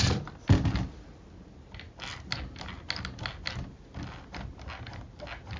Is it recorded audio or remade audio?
recorded